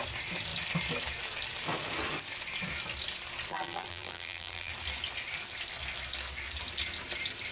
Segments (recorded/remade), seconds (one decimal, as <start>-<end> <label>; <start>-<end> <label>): 0.0-3.5 recorded; 3.5-4.7 remade; 4.7-7.5 recorded